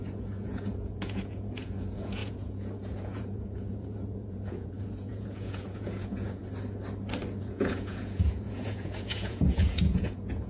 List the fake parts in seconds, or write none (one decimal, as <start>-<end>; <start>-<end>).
0.0-6.4; 7.4-10.5